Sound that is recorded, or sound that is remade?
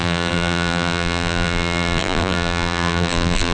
remade